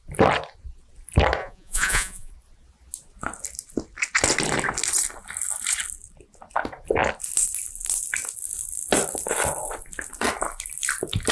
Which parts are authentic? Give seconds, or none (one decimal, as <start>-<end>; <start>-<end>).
0.0-1.4; 2.3-11.3